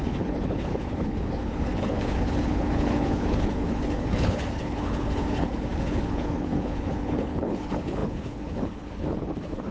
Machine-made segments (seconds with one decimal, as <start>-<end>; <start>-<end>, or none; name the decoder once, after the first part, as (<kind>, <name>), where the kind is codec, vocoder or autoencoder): 0.0-9.7 (codec, HILCodec)